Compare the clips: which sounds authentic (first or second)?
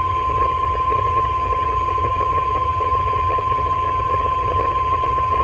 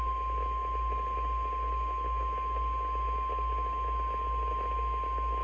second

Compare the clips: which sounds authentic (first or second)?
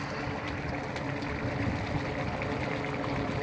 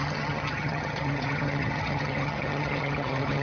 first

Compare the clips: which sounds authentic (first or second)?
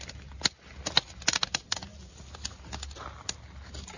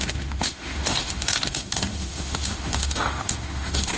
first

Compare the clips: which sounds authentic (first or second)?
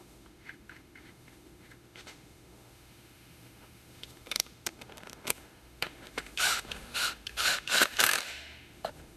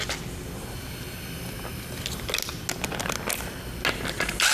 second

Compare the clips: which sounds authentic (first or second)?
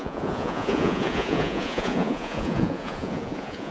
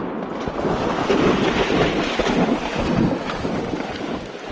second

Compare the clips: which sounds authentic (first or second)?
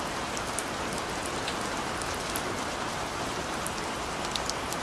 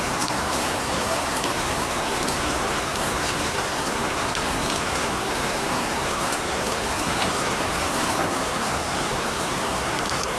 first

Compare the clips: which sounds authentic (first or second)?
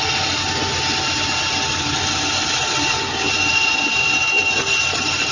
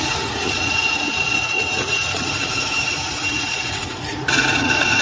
first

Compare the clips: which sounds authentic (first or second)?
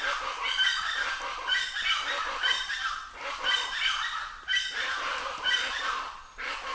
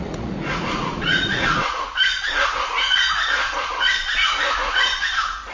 first